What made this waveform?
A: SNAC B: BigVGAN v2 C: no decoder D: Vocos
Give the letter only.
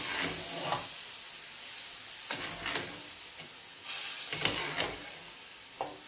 C